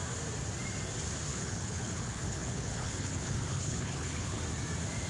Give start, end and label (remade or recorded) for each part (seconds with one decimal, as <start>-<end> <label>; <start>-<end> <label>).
0.0-1.3 recorded; 1.3-4.4 remade; 4.4-5.1 recorded